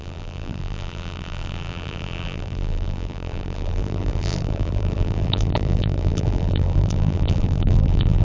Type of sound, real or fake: fake